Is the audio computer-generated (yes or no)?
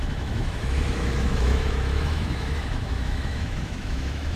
yes